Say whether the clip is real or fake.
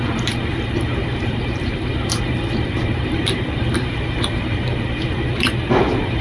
fake